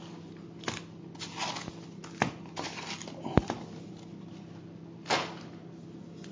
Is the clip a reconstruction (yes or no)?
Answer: no